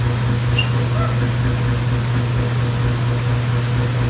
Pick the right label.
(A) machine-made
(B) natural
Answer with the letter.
B